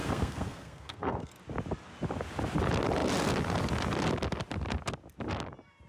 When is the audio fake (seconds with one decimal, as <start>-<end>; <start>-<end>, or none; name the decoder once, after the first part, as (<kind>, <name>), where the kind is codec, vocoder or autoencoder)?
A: 0.0-1.3 (codec, SNAC)